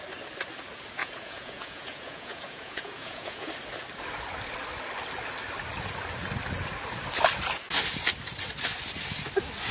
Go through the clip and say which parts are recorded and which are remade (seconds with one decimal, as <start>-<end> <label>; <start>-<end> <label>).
0.0-1.0 recorded; 1.0-3.5 remade; 3.5-9.7 recorded